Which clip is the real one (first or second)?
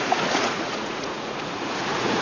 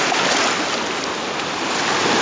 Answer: second